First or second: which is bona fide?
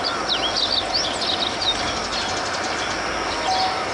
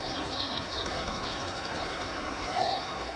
first